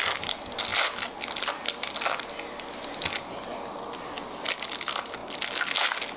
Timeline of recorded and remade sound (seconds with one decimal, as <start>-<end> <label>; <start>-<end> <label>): 0.0-6.2 recorded